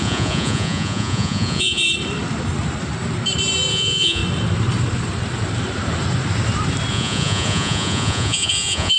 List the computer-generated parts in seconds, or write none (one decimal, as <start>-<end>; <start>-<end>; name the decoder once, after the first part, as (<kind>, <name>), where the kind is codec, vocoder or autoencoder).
0.0-1.8 (vocoder, Vocos); 3.7-4.2; 6.9-9.0